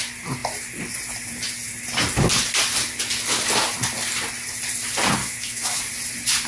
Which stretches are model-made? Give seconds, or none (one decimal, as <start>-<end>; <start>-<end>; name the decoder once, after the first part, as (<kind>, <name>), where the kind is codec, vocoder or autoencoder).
5.2-5.8 (autoencoder, DAC-VAE)